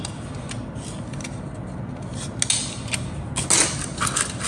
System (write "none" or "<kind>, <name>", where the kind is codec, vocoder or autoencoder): none